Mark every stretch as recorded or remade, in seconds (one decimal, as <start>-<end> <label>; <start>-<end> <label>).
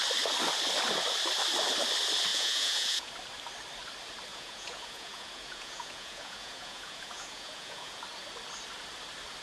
0.0-2.3 recorded; 2.3-3.1 remade; 3.1-4.3 recorded; 4.3-8.0 remade; 8.0-9.4 recorded